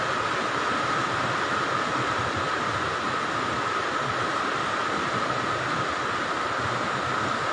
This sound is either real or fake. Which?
real